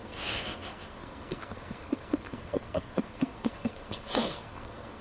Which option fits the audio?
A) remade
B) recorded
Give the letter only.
A